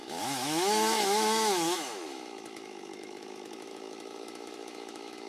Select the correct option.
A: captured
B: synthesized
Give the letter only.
B